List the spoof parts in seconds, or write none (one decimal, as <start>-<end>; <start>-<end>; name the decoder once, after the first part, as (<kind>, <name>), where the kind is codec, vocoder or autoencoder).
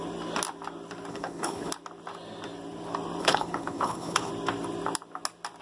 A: 1.1-1.7 (codec, HILCodec); 3.2-4.3